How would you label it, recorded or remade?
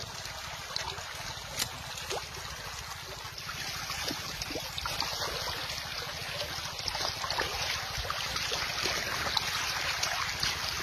recorded